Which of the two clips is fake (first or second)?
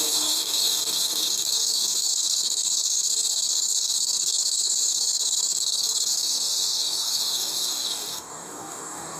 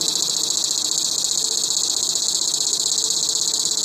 first